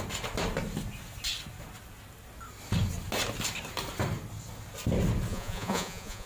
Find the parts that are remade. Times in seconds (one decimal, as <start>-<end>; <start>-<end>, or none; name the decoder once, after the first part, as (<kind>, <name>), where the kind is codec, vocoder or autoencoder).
5.3-6.3 (vocoder, Vocos)